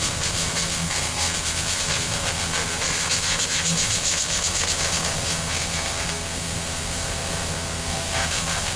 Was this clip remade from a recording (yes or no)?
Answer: yes